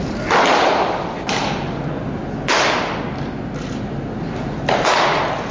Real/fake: real